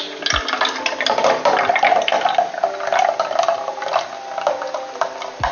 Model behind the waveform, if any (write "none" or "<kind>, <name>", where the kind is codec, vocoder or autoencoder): none